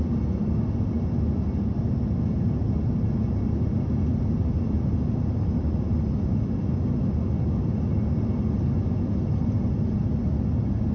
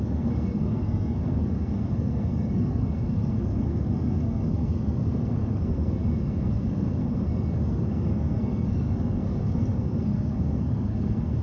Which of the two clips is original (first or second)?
first